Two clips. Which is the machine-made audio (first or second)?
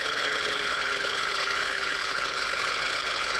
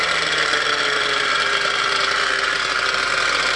first